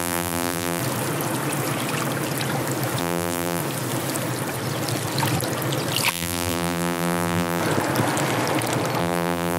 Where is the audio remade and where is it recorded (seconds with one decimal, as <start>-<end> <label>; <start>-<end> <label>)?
0.0-0.8 remade; 0.8-3.0 recorded; 3.0-3.6 remade; 3.6-6.1 recorded; 6.1-7.6 remade; 7.6-9.0 recorded; 9.0-9.6 remade